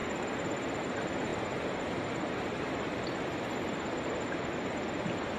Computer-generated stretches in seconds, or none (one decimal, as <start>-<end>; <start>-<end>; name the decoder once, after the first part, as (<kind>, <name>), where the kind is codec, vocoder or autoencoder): none